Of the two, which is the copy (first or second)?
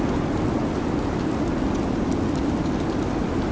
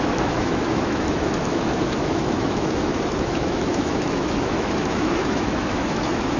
second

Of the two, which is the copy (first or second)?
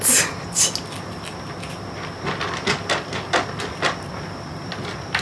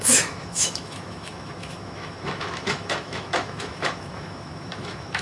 second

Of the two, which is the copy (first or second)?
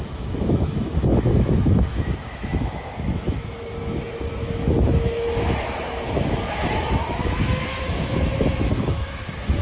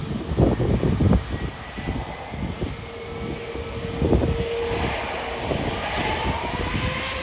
first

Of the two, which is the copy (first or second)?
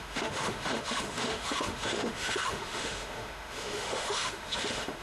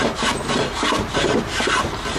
first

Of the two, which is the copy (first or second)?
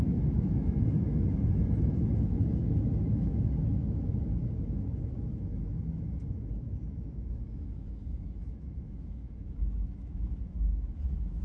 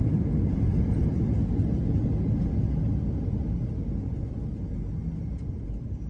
first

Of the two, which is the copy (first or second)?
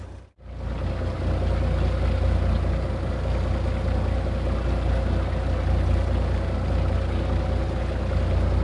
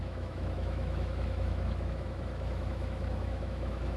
second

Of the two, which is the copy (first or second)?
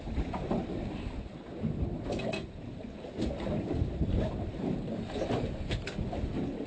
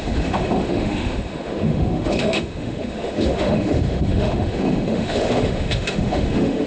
second